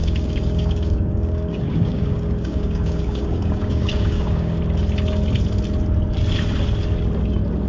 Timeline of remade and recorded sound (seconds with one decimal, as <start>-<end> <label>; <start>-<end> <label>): 0.0-4.6 remade; 4.6-7.7 recorded